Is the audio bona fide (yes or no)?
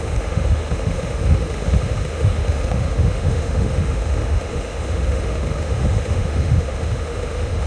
no